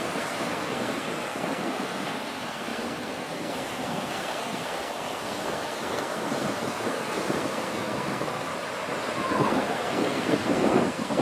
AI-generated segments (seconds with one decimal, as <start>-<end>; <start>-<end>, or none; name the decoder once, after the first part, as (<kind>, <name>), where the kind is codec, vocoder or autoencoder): 0.0-8.5 (codec, SNAC); 9.3-11.2